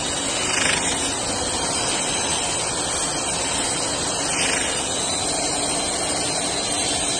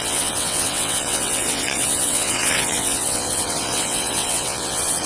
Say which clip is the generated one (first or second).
second